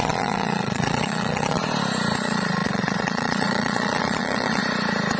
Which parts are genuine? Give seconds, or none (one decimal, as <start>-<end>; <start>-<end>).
1.6-2.2; 4.6-5.2